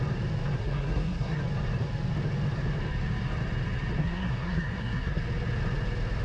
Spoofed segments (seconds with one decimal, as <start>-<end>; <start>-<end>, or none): 0.6-1.4; 4.0-5.2